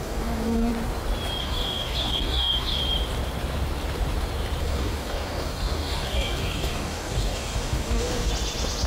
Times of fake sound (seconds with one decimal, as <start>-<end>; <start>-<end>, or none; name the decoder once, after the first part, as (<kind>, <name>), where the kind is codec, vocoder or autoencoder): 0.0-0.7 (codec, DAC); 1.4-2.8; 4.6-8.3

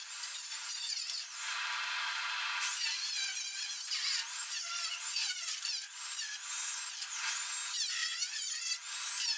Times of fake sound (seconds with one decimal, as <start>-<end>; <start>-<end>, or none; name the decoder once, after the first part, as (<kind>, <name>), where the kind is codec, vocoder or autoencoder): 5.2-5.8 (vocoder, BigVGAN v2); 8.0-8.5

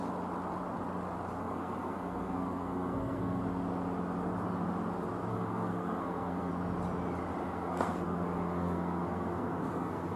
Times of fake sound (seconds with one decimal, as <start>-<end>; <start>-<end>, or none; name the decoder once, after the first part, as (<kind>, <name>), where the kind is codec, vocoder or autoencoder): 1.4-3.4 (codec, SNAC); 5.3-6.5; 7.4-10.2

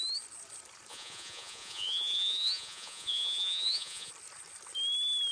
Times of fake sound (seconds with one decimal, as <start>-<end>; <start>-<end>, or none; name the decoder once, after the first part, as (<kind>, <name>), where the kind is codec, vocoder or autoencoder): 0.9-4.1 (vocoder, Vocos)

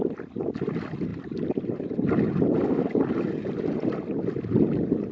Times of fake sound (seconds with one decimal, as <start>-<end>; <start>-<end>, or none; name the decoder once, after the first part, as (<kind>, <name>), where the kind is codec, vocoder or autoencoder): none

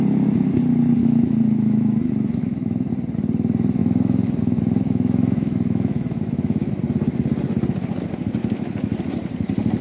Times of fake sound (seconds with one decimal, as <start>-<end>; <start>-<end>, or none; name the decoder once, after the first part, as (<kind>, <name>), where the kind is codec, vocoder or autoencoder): 1.0-2.9 (autoencoder, DAC-VAE); 3.8-6.7; 8.4-9.0

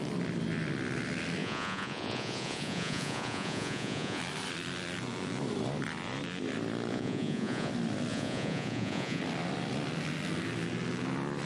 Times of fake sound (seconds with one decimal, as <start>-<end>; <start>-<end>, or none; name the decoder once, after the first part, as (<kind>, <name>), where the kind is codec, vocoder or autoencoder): 1.4-4.2 (vocoder, Vocos); 6.9-7.7; 8.1-9.2

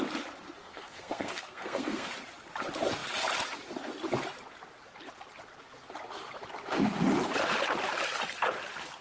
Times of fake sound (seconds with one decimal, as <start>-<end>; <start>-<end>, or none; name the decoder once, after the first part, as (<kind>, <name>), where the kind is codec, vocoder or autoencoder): 0.6-2.1 (codec, SNAC)